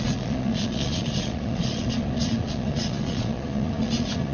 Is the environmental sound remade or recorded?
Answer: remade